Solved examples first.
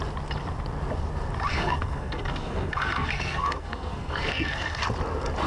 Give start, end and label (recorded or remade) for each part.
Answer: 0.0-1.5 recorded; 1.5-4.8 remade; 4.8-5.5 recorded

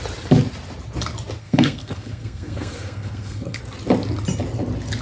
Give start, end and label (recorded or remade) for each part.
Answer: 0.0-1.4 recorded; 1.4-3.6 remade; 3.6-5.0 recorded

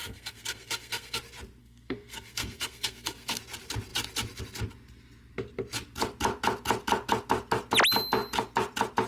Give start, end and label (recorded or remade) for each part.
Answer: 0.0-1.2 remade; 1.2-1.6 recorded; 1.6-3.4 remade; 3.4-9.1 recorded

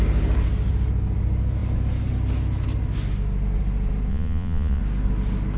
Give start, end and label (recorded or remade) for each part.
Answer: 0.0-4.1 recorded; 4.1-4.8 remade; 4.8-5.6 recorded

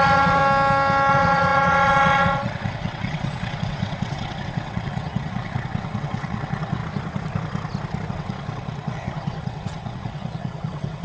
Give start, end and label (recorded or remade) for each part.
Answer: 0.0-0.4 remade; 0.4-1.1 recorded; 1.1-6.8 remade; 6.8-8.1 recorded; 8.1-11.0 remade

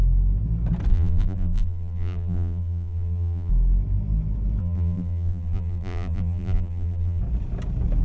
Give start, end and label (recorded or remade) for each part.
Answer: 0.0-0.9 recorded; 0.9-3.5 remade; 3.5-4.6 recorded; 4.6-7.2 remade; 7.2-8.0 recorded

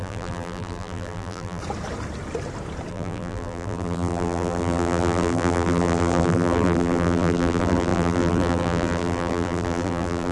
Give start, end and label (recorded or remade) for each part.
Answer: 0.0-1.6 remade; 1.6-2.9 recorded; 2.9-10.3 remade